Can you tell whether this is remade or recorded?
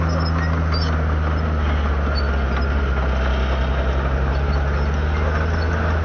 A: recorded